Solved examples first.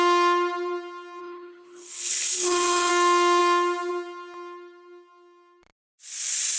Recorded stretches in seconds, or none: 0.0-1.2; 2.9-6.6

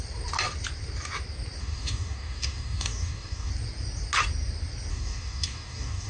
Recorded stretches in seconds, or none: 0.0-1.6; 3.5-4.9

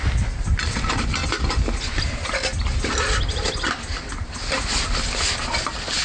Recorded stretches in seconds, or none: 0.0-6.0

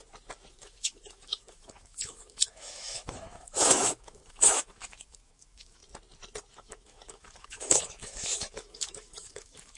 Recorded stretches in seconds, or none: 0.0-0.5; 5.8-6.5

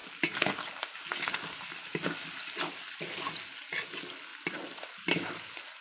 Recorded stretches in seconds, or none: 0.0-5.8

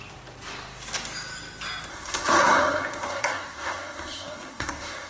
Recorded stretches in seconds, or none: 0.0-1.9

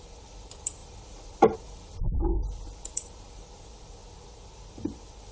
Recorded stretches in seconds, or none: 4.0-4.7